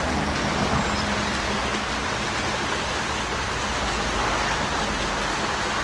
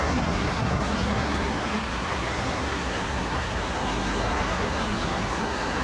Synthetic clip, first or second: second